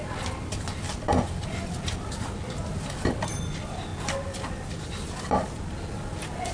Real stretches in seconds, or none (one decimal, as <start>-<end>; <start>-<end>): 0.0-6.5

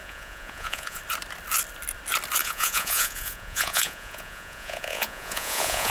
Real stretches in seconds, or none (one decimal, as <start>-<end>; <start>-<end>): 1.0-2.4

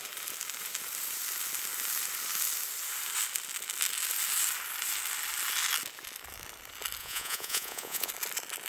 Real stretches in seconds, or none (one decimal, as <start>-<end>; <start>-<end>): 0.0-7.0; 8.1-8.7

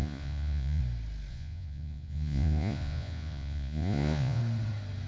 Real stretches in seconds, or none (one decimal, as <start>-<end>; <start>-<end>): 0.8-1.3; 4.4-5.1

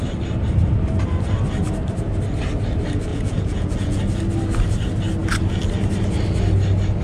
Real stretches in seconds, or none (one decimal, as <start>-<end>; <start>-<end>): 0.0-3.1; 4.0-7.0

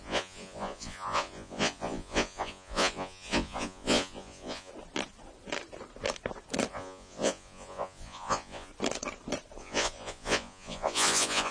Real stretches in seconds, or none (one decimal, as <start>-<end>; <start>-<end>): 4.7-6.7; 8.7-9.6

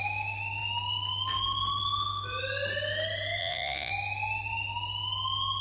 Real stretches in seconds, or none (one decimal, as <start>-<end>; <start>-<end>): 0.0-3.4; 3.9-5.6